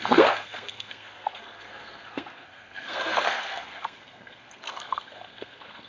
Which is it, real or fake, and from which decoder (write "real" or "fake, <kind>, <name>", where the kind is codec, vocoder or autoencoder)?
fake, codec, SNAC